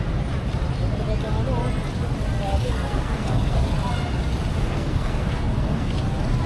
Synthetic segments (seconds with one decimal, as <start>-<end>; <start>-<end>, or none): 2.5-3.7; 4.5-5.9